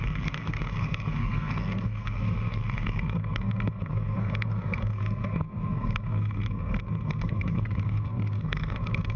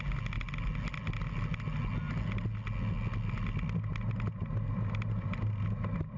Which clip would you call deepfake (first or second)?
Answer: first